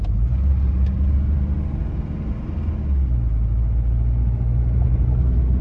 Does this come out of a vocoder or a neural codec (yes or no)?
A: no